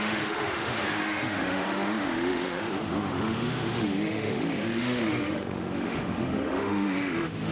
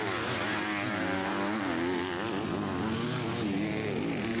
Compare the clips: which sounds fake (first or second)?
first